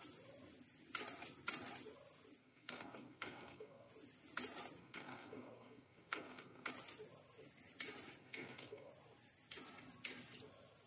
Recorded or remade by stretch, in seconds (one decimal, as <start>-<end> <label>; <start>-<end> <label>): 0.0-2.4 recorded; 2.4-3.9 remade; 3.9-4.8 recorded; 4.8-6.7 remade; 6.7-8.2 recorded; 8.2-8.9 remade; 8.9-10.9 recorded